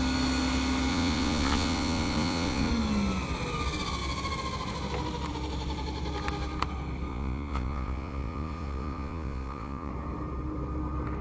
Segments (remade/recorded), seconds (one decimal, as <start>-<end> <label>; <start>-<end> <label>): 0.0-0.9 recorded; 0.9-2.7 remade; 2.7-7.1 recorded; 7.1-9.9 remade; 9.9-11.2 recorded